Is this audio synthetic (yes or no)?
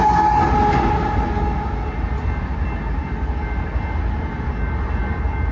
no